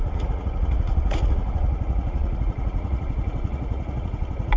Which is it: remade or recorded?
remade